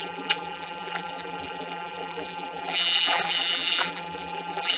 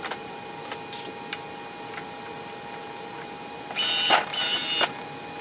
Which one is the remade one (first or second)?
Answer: first